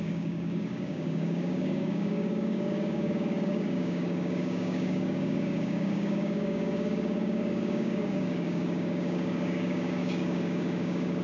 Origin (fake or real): fake